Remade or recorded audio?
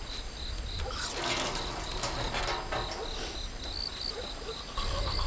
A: recorded